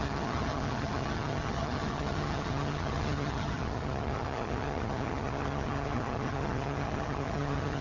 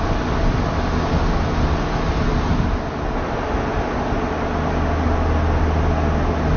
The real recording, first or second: second